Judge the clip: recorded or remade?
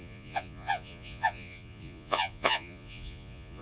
remade